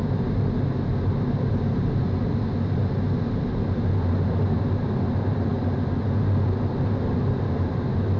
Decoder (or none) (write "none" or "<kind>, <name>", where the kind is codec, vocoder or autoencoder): none